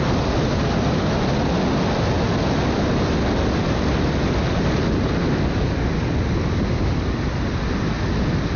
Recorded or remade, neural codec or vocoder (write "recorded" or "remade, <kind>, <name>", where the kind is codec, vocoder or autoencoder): recorded